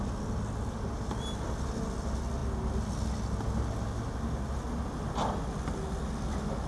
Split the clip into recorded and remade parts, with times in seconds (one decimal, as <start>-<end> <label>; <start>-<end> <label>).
0.0-6.7 recorded